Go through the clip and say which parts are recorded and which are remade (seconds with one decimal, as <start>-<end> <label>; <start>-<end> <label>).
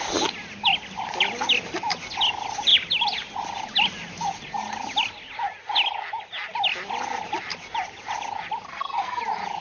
0.0-8.7 recorded; 8.7-9.2 remade; 9.2-9.6 recorded